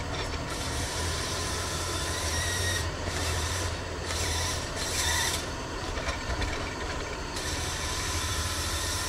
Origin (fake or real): fake